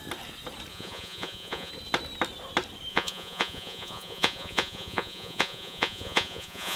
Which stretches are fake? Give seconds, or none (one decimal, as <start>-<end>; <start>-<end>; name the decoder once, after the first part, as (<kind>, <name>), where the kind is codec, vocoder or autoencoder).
0.7-1.7 (vocoder, Vocos); 2.9-6.8